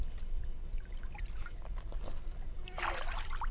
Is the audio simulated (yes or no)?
no